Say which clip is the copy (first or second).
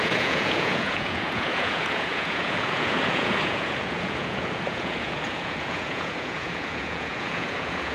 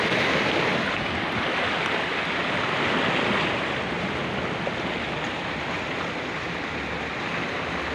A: first